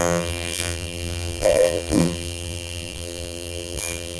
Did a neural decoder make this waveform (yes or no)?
yes